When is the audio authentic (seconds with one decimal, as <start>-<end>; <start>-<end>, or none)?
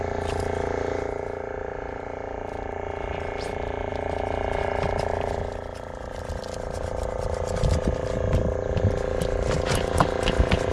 0.0-10.7